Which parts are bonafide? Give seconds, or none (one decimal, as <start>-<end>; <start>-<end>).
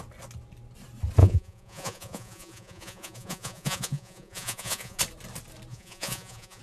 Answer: 0.0-1.2; 5.0-5.7